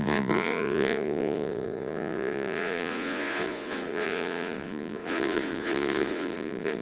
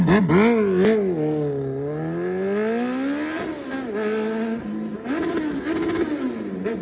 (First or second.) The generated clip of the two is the first